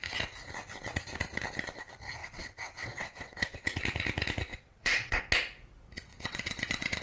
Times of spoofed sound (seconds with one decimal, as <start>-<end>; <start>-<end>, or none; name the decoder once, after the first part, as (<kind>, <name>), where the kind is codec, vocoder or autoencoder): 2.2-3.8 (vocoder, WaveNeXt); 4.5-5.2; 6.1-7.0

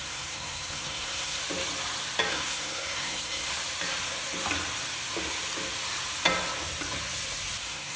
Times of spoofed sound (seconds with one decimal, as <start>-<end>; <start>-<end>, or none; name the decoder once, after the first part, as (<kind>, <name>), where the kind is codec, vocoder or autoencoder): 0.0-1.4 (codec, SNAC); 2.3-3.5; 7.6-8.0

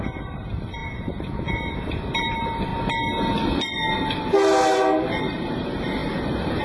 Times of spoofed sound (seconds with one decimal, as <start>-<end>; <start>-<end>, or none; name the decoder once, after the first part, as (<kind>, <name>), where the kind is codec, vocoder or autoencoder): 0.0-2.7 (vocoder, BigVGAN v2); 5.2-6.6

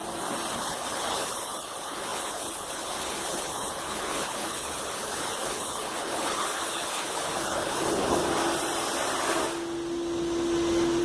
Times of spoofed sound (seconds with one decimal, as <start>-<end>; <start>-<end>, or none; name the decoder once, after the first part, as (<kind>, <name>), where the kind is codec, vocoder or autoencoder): 0.5-8.2 (codec, HILCodec)

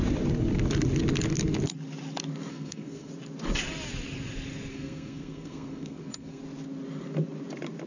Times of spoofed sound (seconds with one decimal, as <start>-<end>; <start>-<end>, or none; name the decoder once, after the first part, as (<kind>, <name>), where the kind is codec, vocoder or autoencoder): 2.5-3.1 (codec, SNAC); 4.7-6.4

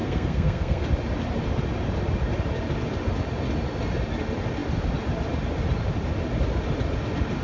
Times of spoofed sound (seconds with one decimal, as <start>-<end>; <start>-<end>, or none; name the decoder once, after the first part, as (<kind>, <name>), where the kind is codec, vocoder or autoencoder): 0.0-0.8 (codec, SNAC)